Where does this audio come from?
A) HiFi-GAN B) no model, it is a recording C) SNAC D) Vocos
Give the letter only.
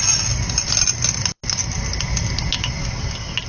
B